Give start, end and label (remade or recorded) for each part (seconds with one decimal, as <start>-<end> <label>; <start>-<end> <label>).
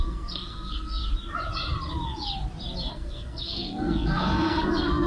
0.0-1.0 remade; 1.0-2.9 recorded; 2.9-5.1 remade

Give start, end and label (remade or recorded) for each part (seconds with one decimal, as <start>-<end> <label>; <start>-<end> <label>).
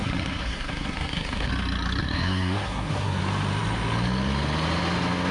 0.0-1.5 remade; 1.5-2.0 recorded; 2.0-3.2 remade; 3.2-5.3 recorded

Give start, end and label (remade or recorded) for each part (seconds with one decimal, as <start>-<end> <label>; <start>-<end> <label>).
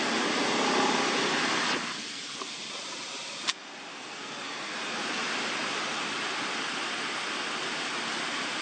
0.0-2.0 recorded; 2.0-2.6 remade; 2.6-3.9 recorded; 3.9-4.8 remade; 4.8-8.6 recorded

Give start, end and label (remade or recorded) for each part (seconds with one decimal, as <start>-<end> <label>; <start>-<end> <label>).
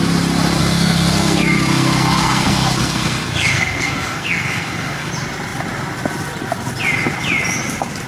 0.0-0.6 recorded; 0.6-5.1 remade; 5.1-8.1 recorded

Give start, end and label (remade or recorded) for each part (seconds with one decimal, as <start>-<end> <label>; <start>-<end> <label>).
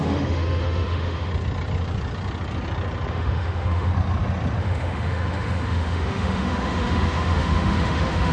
0.0-1.3 remade; 1.3-3.1 recorded; 3.1-3.9 remade; 3.9-4.6 recorded; 4.6-8.3 remade